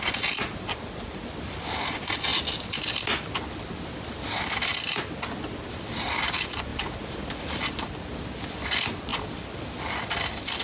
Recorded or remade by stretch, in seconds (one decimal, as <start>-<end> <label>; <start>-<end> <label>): 0.0-10.6 recorded